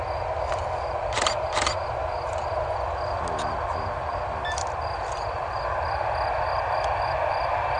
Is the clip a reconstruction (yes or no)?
no